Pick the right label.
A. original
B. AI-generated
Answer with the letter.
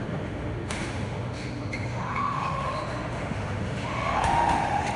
B